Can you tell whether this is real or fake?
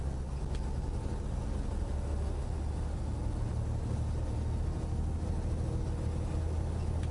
real